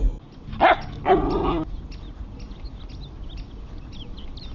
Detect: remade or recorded recorded